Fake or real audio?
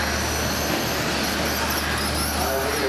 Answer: real